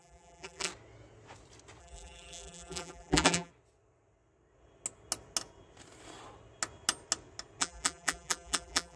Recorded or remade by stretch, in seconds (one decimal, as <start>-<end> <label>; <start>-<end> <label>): 0.0-0.7 remade; 0.7-1.8 recorded; 1.8-3.5 remade; 3.5-7.6 recorded; 7.6-9.0 remade